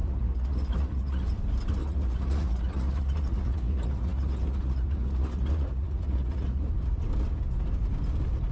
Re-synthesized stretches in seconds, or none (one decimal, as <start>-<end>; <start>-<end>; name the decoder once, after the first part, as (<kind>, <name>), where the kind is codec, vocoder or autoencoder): 0.0-1.2 (vocoder, Vocos); 1.8-6.7